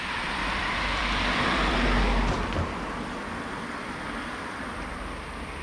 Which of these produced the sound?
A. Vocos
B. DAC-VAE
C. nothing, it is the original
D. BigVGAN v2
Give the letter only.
D